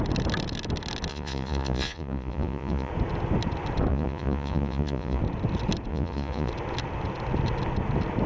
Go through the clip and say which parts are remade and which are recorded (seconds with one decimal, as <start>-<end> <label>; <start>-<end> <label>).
0.0-1.1 recorded; 1.1-2.9 remade; 2.9-3.9 recorded; 3.9-5.2 remade; 5.2-5.9 recorded; 5.9-6.5 remade; 6.5-8.3 recorded